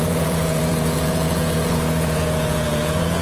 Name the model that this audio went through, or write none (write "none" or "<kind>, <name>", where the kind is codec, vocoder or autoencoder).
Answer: vocoder, Vocos